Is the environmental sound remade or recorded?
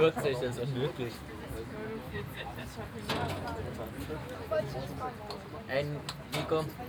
recorded